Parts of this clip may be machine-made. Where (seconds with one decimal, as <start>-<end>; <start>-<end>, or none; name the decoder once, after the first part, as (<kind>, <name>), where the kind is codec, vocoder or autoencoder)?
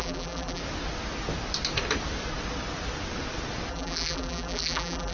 0.0-0.6 (vocoder, BigVGAN v2); 3.7-5.1